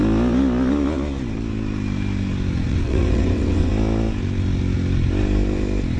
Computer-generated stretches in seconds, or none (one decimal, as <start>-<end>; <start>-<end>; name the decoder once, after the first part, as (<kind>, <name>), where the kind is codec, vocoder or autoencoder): 2.7-3.7 (vocoder, WaveNeXt)